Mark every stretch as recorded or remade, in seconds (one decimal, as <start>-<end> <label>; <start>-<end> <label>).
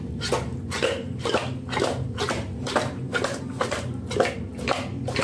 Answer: 0.0-5.2 recorded